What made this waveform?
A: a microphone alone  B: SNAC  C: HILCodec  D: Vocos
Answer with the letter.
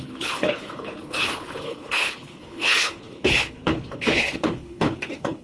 C